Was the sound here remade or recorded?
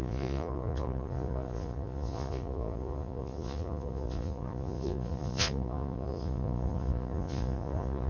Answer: remade